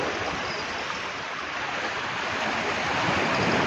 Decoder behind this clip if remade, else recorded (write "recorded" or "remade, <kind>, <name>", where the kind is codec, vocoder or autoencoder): recorded